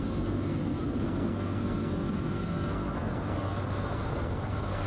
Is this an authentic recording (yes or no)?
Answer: no